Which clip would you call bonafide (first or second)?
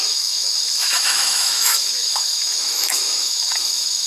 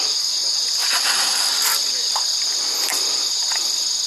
second